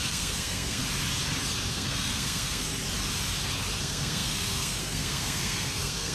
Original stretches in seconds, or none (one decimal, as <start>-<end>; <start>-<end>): 0.8-1.7; 2.7-3.8